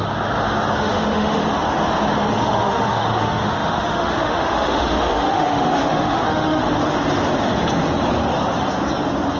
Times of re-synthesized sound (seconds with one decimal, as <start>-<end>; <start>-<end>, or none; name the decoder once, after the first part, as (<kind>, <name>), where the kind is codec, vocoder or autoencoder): 0.8-1.4 (autoencoder, DAC-VAE); 2.3-6.6